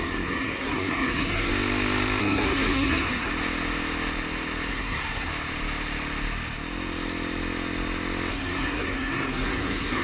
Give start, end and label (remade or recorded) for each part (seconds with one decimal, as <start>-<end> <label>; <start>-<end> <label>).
0.0-1.5 remade; 1.5-2.2 recorded; 2.2-3.3 remade; 3.3-4.7 recorded; 4.7-5.3 remade; 5.3-8.3 recorded; 8.3-10.0 remade